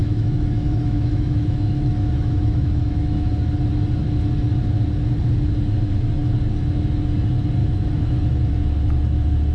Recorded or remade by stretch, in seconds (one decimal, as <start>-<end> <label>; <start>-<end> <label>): 0.0-3.3 remade; 3.3-7.6 recorded; 7.6-8.5 remade; 8.5-9.5 recorded